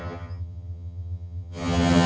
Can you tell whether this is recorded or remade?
remade